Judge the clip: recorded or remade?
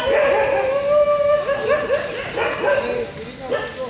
recorded